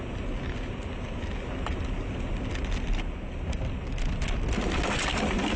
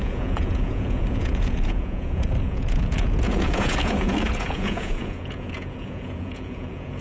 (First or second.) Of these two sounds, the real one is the first